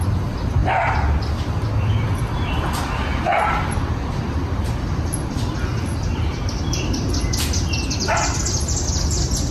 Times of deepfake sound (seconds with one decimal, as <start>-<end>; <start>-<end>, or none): 0.6-1.2; 5.7-7.3